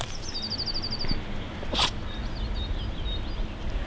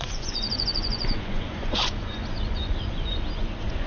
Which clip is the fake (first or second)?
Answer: second